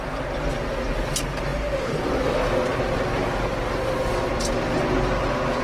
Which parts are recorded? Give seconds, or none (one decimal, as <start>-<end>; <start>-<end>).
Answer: 0.0-5.6